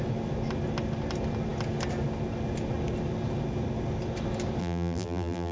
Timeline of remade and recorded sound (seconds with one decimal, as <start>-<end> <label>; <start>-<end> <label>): 0.0-4.6 recorded; 4.6-5.5 remade